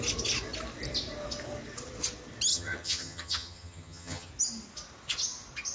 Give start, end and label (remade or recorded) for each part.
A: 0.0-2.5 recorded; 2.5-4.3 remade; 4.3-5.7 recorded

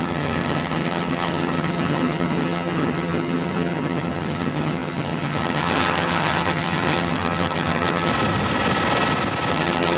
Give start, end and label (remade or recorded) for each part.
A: 0.0-8.1 remade; 8.1-9.5 recorded; 9.5-10.0 remade

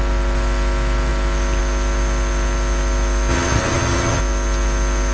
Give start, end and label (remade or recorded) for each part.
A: 0.0-3.3 recorded; 3.3-4.2 remade; 4.2-5.1 recorded

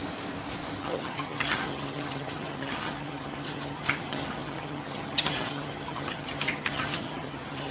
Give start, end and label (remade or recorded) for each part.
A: 0.0-0.8 recorded; 0.8-7.7 remade